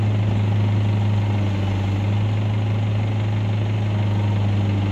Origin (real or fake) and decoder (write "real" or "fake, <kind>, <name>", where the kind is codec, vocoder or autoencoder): real